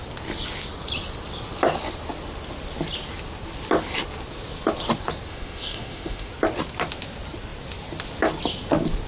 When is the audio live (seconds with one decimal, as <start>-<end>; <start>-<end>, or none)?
0.0-5.3; 6.3-9.1